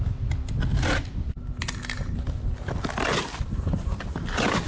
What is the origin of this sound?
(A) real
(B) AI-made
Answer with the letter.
A